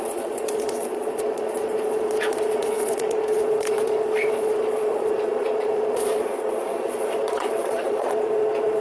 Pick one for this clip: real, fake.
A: fake